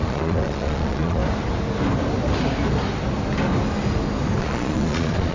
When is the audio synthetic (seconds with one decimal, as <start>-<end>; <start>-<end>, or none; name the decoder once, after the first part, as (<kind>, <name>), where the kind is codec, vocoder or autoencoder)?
0.0-1.2 (vocoder, Vocos); 4.4-5.3